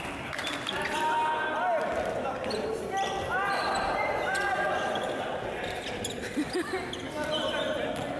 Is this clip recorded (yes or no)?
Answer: yes